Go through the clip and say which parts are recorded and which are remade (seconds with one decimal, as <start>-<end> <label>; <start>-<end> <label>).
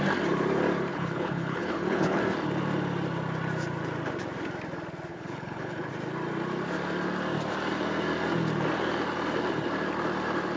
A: 0.0-0.9 recorded; 0.9-2.2 remade; 2.2-5.1 recorded; 5.1-5.9 remade; 5.9-10.6 recorded